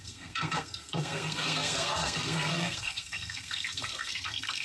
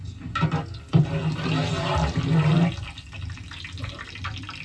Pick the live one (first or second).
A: second